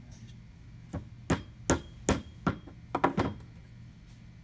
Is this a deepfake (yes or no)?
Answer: no